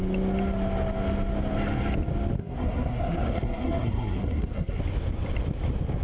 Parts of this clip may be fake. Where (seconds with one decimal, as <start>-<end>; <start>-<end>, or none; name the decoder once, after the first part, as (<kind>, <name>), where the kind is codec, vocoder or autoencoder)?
2.4-4.8 (codec, SNAC)